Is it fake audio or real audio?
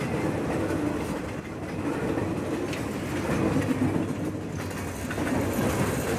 real